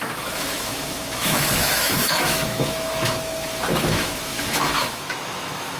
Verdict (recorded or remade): remade